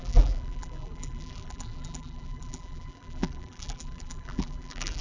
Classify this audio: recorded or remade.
remade